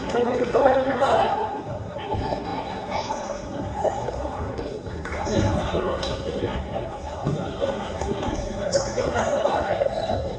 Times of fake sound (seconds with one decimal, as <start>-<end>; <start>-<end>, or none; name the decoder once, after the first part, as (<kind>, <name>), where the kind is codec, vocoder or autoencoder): 0.0-10.4 (codec, SNAC)